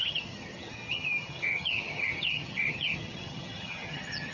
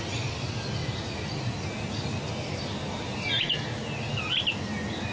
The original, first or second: second